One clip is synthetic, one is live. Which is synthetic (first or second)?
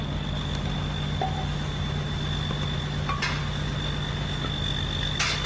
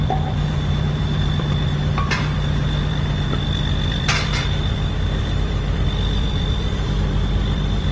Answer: second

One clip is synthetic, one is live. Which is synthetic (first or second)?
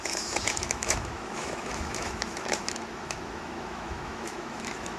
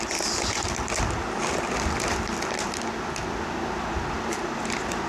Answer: first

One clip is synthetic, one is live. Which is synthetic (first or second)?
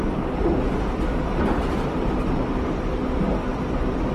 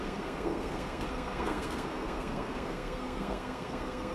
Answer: second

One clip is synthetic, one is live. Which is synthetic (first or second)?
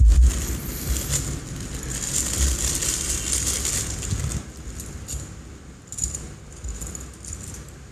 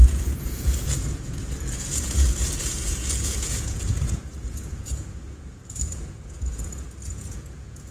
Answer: second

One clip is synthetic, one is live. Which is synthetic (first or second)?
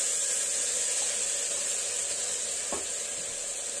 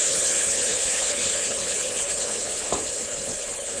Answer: second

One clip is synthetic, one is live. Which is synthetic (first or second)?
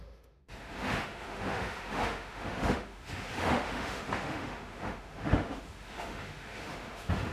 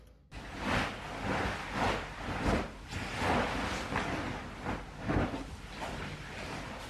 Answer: first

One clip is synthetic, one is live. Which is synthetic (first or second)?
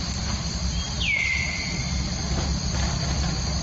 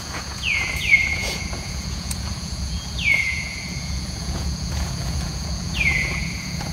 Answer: second